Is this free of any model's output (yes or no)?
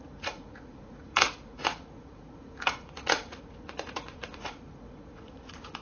no